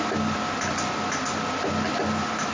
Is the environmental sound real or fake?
real